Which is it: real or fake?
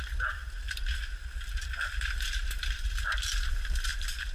real